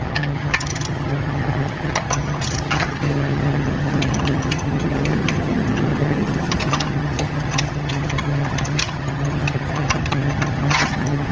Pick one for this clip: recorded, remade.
remade